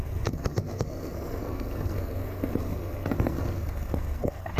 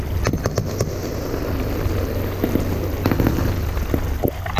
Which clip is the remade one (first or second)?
first